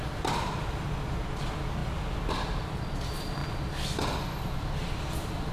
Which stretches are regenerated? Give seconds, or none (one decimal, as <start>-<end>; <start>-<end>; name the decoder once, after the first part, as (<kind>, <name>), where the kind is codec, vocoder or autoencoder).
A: none